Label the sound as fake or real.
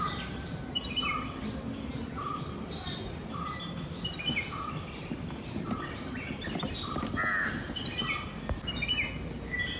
real